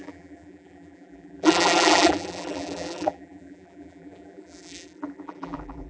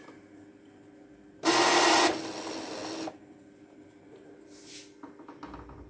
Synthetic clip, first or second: first